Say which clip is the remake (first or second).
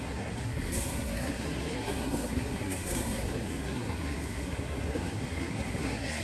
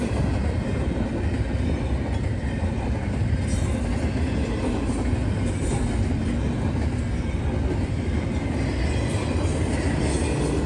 first